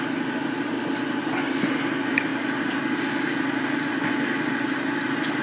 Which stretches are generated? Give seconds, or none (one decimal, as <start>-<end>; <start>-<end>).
none